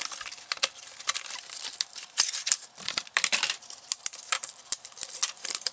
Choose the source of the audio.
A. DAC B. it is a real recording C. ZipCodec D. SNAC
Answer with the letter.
B